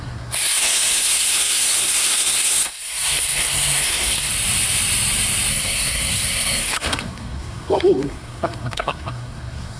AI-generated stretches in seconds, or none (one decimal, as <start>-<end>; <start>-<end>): 0.0-4.3; 5.5-9.8